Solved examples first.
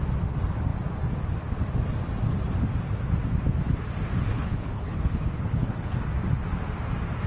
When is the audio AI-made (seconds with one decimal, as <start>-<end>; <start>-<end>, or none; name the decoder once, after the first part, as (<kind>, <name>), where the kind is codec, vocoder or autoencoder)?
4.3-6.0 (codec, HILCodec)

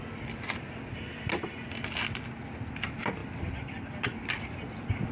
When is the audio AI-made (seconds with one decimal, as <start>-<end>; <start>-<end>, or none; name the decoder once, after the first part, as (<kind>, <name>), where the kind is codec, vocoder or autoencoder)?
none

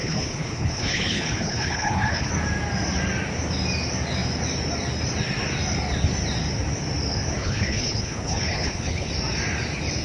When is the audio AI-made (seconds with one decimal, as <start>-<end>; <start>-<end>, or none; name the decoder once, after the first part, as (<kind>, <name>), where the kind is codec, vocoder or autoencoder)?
0.0-2.3 (codec, HILCodec); 7.4-9.1

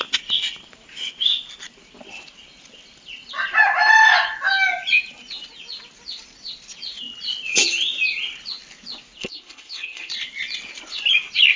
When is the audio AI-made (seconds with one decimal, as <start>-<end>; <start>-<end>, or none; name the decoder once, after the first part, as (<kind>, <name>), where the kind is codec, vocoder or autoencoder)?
9.2-10.1 (codec, HILCodec)